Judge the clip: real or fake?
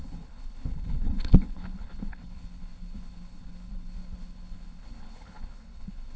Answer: fake